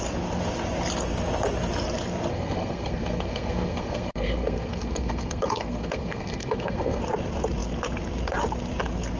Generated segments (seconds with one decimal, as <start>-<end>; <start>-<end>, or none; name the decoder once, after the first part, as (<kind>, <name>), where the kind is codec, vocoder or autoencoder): 2.3-7.0 (codec, SNAC)